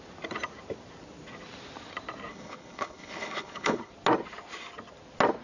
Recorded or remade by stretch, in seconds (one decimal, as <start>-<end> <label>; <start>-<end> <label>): 0.0-2.3 recorded; 2.3-3.9 remade; 3.9-5.4 recorded